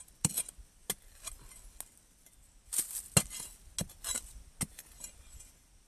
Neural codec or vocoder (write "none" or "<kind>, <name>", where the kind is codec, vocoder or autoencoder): none